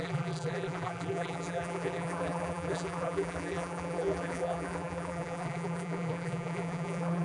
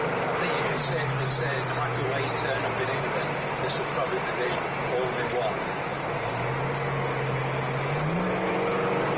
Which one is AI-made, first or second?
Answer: first